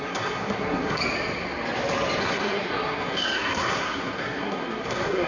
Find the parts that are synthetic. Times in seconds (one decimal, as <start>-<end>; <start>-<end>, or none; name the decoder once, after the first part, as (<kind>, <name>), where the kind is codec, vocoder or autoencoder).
0.0-1.0 (codec, SNAC); 2.2-5.3